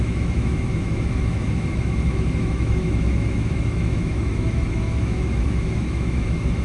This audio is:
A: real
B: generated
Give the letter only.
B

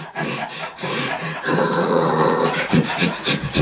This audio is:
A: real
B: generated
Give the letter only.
B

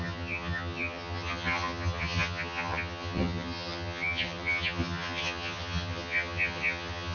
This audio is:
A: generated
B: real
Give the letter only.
A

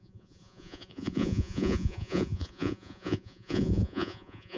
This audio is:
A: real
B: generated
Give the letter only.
B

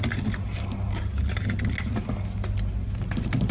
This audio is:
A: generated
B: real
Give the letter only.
B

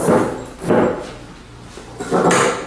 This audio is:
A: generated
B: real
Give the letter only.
B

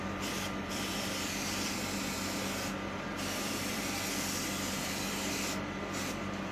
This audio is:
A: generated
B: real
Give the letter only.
B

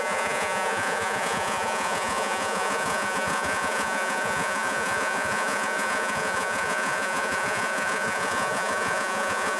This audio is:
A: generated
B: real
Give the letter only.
A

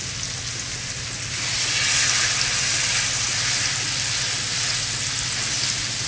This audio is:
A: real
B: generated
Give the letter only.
A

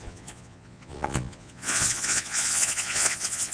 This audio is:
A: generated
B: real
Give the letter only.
A